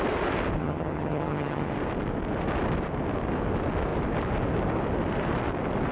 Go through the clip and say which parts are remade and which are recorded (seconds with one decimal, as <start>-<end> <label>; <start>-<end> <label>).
0.0-0.6 recorded; 0.6-1.7 remade; 1.7-5.9 recorded